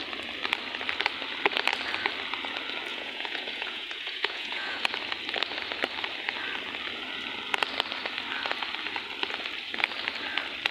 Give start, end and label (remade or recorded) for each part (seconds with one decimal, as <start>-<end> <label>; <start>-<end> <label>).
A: 0.0-2.9 recorded; 2.9-4.9 remade; 4.9-10.7 recorded